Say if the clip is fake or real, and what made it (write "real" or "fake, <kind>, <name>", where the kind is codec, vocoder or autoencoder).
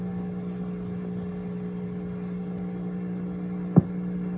real